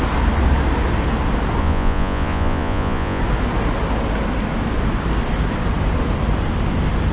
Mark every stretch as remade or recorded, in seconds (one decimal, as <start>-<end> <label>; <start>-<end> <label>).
0.0-1.6 recorded; 1.6-3.2 remade; 3.2-7.1 recorded